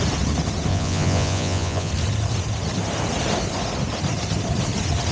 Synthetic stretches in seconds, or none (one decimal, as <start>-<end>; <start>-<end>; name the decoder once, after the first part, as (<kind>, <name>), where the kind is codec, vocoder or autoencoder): 0.7-1.9 (vocoder, Vocos)